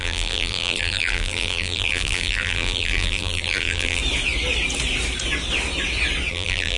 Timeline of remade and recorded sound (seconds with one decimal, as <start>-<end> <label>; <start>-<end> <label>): 0.0-4.0 remade; 4.0-6.3 recorded; 6.3-6.8 remade